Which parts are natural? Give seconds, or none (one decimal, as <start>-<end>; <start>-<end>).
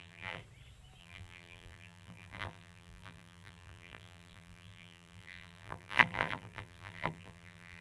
0.4-1.0